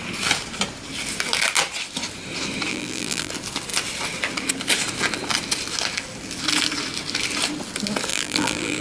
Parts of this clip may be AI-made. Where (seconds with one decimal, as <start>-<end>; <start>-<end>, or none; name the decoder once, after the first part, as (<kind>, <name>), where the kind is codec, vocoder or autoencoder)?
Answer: 2.7-3.3 (vocoder, BigVGAN v2); 8.1-8.8